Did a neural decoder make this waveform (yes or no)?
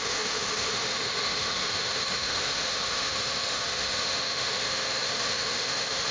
yes